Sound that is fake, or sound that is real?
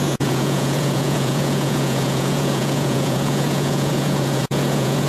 fake